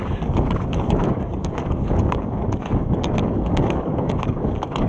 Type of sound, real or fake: fake